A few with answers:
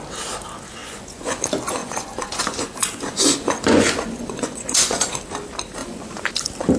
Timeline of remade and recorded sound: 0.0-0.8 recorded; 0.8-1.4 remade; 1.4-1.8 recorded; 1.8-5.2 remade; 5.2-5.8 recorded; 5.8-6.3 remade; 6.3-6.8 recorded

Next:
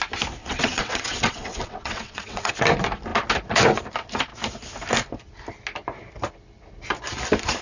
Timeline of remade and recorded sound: 0.0-0.4 recorded; 0.4-2.5 remade; 2.5-7.6 recorded

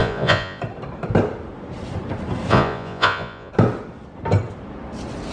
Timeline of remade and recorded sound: 0.0-0.6 remade; 0.6-2.5 recorded; 2.5-3.5 remade; 3.5-5.3 recorded